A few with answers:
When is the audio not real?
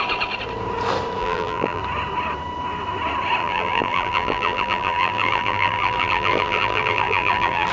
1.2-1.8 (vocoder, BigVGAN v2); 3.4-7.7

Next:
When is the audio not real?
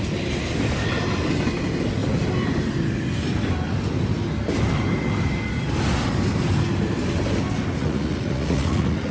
7.8-9.1 (vocoder, Vocos)